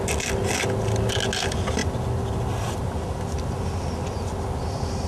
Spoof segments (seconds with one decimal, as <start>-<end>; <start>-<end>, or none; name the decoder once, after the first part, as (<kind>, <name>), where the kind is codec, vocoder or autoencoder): none